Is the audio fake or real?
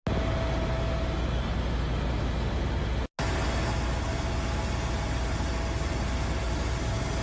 real